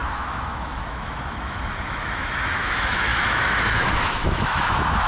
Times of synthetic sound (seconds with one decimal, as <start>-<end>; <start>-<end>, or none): 0.0-5.1